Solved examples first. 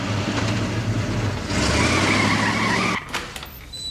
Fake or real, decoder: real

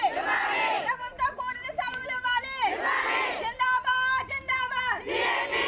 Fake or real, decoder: real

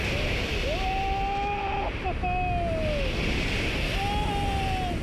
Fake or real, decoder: real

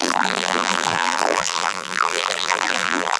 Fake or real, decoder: fake, vocoder, BigVGAN v2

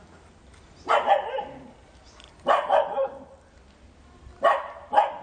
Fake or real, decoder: fake, vocoder, BigVGAN v2